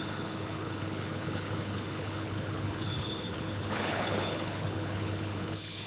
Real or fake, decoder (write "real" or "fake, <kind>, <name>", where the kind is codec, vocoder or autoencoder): fake, codec, HILCodec